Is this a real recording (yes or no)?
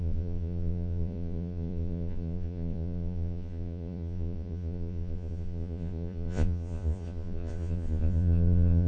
no